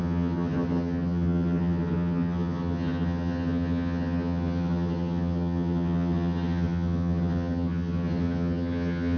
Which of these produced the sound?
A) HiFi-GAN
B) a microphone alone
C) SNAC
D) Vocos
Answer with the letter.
A